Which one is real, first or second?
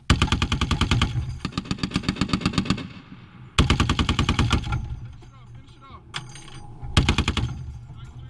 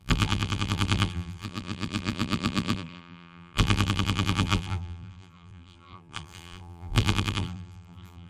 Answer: first